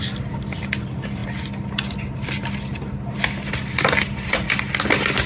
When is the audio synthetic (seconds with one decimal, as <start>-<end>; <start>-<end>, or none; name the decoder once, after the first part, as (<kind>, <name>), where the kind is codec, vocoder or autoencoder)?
none